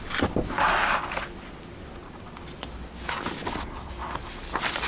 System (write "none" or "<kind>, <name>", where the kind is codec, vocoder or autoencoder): none